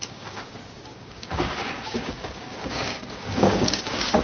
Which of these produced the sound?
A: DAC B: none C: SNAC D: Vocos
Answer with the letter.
A